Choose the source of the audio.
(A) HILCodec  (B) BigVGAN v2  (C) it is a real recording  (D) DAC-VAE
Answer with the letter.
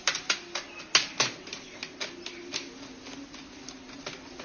C